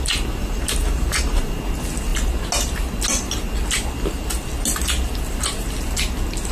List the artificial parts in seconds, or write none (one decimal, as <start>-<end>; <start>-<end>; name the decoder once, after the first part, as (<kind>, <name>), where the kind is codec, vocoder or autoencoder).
0.4-1.6 (vocoder, BigVGAN v2)